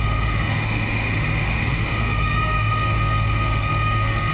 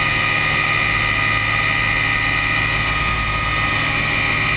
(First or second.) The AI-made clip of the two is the first